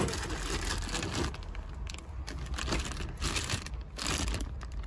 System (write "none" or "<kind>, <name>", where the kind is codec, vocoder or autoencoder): none